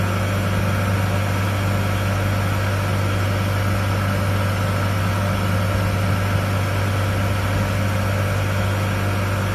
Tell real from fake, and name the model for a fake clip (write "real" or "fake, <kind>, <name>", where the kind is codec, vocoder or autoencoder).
real